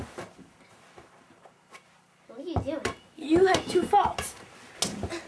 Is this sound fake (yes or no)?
no